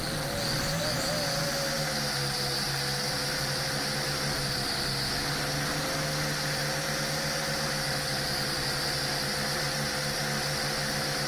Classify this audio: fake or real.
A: real